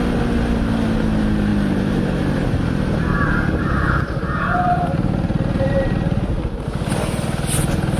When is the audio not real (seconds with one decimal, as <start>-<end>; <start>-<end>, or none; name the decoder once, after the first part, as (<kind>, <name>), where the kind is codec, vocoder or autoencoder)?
1.5-6.3 (vocoder, BigVGAN v2)